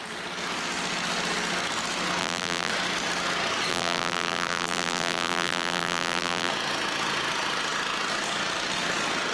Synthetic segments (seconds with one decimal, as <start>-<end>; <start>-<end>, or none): 2.2-2.7; 3.7-6.5